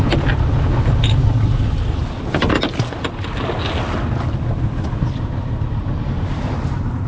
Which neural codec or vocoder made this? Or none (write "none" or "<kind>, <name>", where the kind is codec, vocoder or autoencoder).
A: none